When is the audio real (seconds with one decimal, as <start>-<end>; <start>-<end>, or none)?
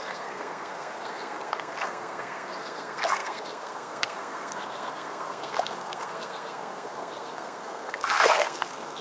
none